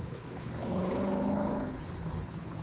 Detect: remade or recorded remade